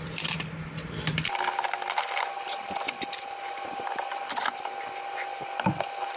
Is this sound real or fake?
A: fake